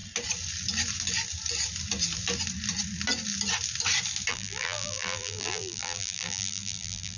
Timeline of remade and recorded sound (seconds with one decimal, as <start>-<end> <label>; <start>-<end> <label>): 0.0-4.3 recorded; 4.3-7.2 remade